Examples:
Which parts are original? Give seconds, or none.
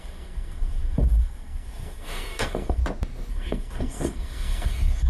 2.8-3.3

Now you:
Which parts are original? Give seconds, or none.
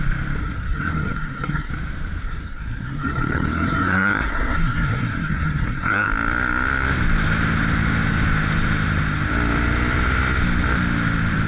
0.0-0.4; 1.7-2.2; 6.1-11.5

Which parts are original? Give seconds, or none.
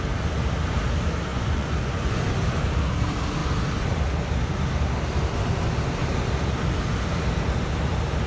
0.0-1.3; 2.2-8.3